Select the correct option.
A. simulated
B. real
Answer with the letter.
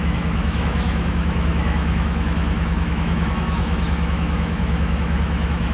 A